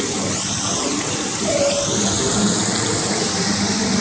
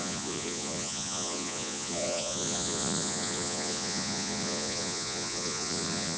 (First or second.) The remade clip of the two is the second